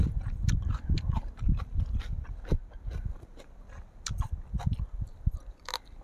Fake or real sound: real